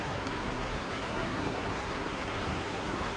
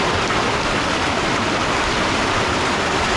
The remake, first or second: first